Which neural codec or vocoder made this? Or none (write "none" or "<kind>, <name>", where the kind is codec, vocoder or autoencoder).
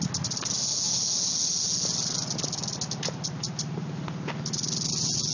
none